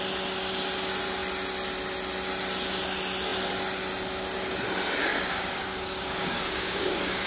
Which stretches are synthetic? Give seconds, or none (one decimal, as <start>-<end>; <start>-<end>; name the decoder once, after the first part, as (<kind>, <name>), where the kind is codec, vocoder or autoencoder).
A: 5.1-7.3 (codec, DAC)